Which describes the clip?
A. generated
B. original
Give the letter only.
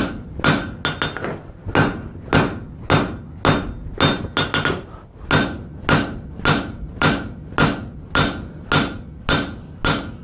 B